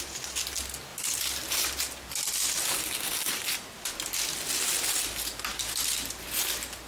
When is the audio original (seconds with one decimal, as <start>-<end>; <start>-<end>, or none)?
0.0-6.9